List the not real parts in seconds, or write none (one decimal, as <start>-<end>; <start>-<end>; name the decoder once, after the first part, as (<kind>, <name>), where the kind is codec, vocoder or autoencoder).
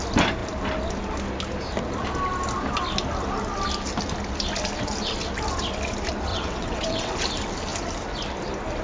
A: 6.3-7.1 (vocoder, WaveNeXt)